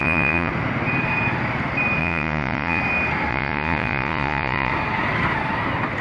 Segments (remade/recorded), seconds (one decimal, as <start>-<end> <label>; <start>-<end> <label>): 0.0-0.5 remade; 0.5-2.0 recorded; 2.0-2.8 remade; 2.8-3.3 recorded; 3.3-4.7 remade; 4.7-6.0 recorded